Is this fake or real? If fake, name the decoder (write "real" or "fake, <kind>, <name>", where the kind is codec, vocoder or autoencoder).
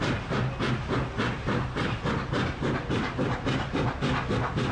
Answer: real